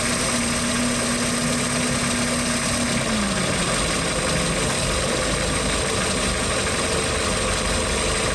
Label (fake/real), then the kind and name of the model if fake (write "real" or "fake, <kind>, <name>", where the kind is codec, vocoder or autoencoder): real